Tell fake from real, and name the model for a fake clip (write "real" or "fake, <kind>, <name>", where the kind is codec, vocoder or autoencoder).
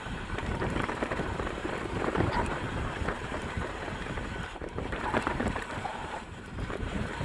fake, vocoder, BigVGAN v2